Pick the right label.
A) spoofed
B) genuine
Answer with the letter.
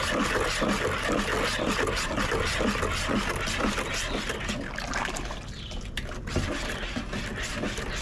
B